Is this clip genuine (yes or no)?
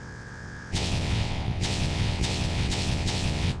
no